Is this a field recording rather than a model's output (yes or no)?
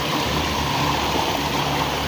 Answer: no